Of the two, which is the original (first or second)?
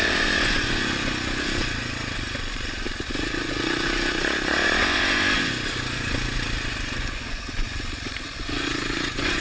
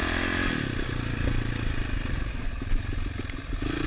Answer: second